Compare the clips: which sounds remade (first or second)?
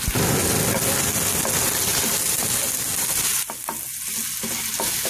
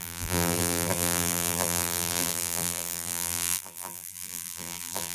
second